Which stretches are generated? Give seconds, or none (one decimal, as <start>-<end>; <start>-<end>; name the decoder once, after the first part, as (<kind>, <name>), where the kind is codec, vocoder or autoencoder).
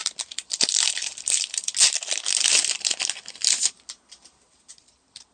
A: none